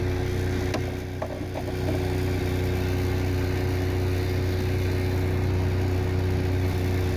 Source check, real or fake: real